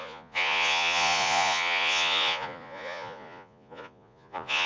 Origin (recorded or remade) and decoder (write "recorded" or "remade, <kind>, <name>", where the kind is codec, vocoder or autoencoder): remade, vocoder, Vocos